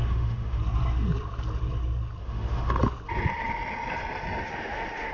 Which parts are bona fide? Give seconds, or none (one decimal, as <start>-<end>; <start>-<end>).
0.6-2.2; 2.8-4.4